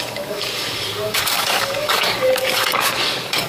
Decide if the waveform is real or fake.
fake